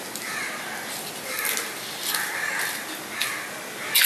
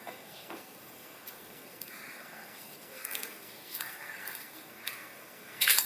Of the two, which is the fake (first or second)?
second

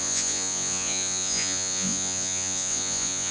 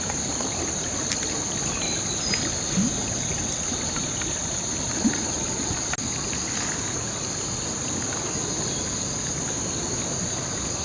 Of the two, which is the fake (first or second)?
first